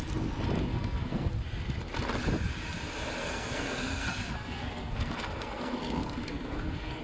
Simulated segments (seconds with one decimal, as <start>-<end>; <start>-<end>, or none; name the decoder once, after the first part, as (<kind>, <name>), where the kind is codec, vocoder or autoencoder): 0.7-1.3 (codec, SNAC); 3.2-7.0